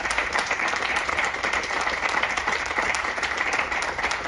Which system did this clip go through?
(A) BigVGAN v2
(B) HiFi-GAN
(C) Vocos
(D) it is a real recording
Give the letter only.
A